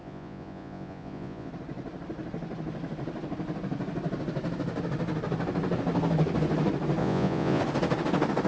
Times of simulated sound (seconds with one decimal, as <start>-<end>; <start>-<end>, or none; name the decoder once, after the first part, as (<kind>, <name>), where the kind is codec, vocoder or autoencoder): 0.0-1.5 (vocoder, Vocos); 7.0-7.6